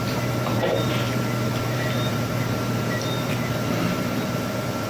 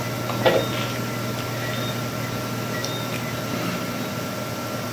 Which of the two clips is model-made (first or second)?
first